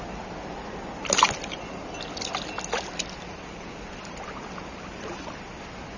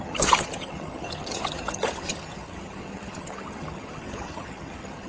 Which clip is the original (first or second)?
first